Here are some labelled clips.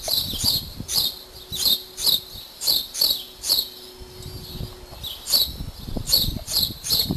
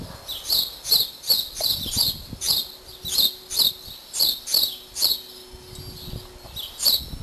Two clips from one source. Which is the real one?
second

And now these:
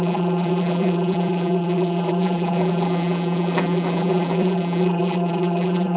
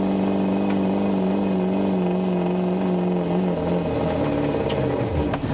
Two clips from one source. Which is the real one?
second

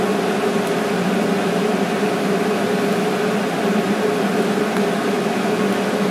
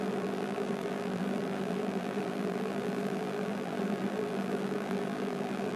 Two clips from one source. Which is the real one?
first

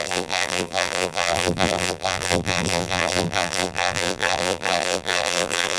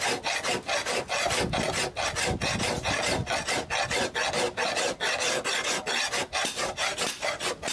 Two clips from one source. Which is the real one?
second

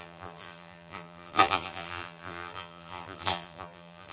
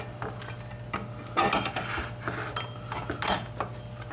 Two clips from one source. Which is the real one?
second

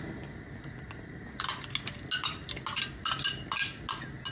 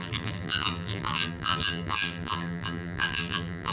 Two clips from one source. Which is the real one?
first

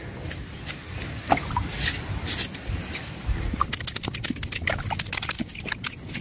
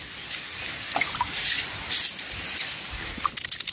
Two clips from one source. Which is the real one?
first